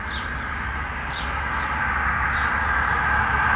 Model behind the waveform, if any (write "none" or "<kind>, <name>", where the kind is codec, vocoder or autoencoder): none